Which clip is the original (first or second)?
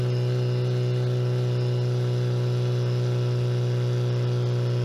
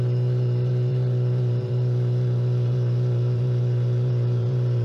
first